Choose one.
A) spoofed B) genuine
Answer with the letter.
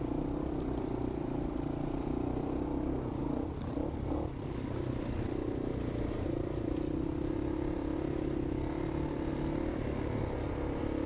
B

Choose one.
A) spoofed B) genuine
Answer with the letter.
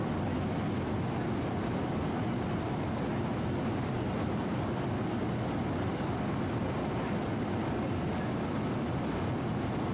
B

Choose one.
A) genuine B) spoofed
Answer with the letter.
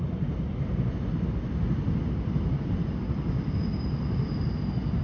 A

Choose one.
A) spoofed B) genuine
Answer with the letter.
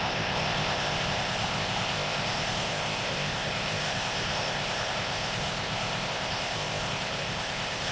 A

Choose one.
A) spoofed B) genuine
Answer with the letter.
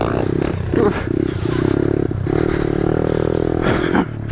B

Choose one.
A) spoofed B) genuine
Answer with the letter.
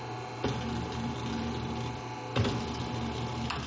B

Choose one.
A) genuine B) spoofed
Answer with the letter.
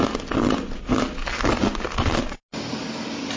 A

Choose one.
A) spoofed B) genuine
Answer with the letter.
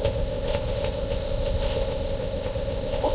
A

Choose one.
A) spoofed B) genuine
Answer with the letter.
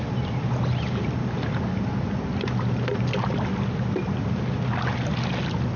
B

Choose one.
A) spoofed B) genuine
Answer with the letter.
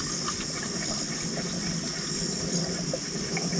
B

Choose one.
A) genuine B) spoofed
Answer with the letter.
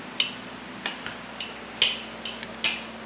A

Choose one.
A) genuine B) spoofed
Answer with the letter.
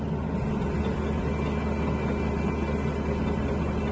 A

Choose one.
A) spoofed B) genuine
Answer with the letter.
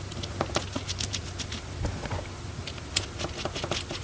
B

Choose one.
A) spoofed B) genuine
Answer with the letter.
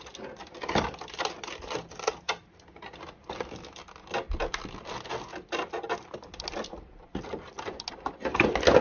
B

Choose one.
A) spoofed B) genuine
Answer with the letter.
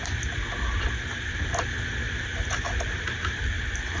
B